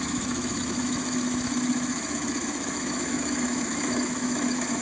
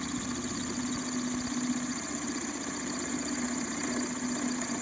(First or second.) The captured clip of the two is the second